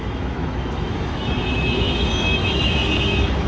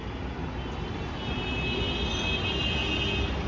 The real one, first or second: second